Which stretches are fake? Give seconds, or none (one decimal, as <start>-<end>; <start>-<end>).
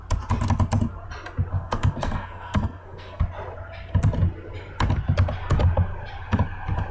1.5-3.2